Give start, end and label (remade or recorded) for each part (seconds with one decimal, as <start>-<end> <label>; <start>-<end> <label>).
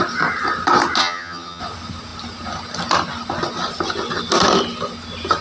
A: 0.0-1.0 recorded; 1.0-1.6 remade; 1.6-5.4 recorded